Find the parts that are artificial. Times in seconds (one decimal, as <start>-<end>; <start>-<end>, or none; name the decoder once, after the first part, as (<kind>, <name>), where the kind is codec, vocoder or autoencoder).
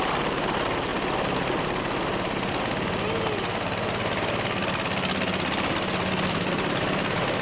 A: 0.9-1.8 (vocoder, BigVGAN v2)